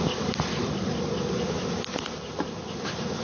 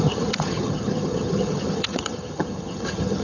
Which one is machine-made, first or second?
second